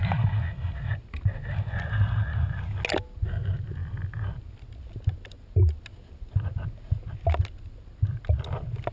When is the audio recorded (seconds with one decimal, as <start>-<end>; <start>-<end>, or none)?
0.0-8.9